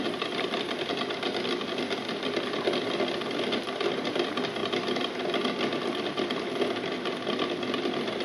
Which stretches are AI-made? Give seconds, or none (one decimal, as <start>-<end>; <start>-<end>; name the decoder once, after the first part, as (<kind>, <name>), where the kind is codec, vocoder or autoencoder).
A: none